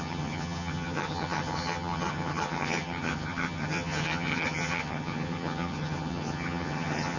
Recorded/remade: remade